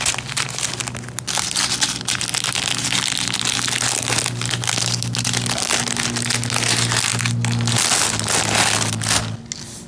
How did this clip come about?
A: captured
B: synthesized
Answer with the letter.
A